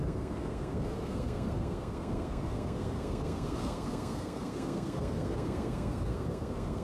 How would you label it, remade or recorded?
remade